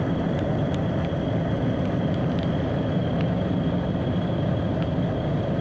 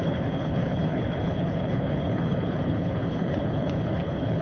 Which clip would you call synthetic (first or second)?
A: second